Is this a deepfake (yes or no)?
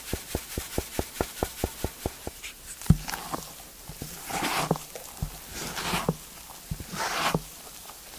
no